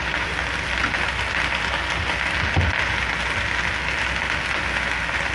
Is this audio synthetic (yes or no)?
no